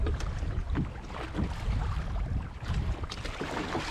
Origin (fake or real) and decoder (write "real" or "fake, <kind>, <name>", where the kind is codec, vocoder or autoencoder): real